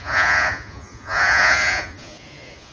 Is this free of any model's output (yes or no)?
no